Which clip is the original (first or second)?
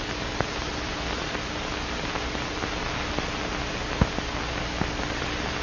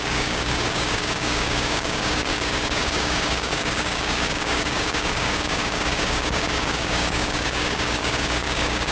first